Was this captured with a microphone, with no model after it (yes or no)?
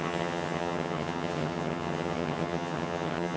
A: no